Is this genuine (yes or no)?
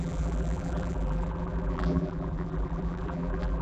no